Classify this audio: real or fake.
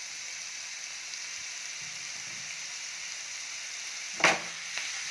real